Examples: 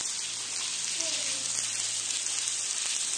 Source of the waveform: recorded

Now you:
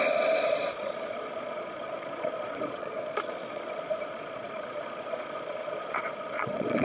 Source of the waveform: remade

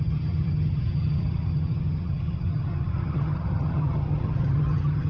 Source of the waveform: remade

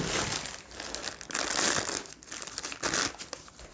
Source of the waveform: recorded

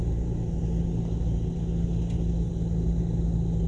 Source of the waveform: recorded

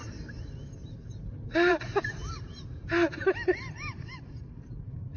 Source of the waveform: remade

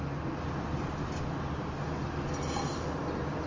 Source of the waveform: recorded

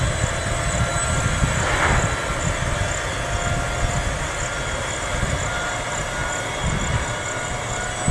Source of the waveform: recorded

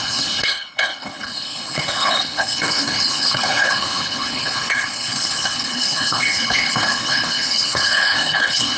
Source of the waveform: remade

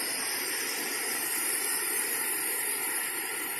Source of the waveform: recorded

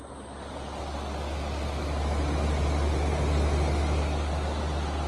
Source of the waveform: recorded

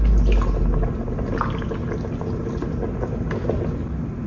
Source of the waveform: recorded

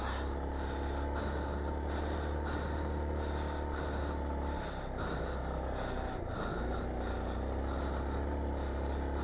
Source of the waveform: recorded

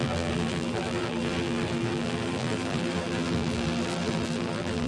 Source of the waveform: remade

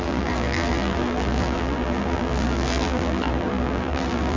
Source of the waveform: remade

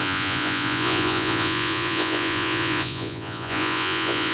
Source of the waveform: remade